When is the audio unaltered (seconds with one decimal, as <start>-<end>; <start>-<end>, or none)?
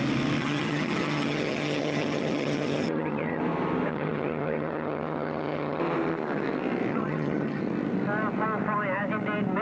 0.0-0.4; 3.4-3.9; 5.8-6.9; 7.6-9.6